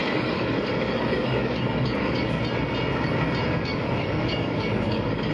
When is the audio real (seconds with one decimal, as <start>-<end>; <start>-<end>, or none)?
2.4-3.7